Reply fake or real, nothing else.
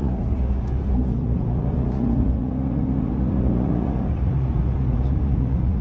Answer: fake